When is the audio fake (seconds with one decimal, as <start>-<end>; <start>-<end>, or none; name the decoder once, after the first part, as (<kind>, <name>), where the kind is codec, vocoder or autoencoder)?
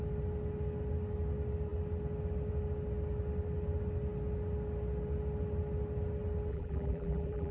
6.5-7.5 (vocoder, BigVGAN v2)